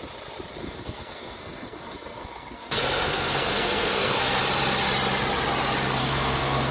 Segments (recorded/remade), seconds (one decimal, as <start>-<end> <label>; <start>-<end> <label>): 0.0-0.6 recorded; 0.6-4.4 remade; 4.4-6.0 recorded; 6.0-6.7 remade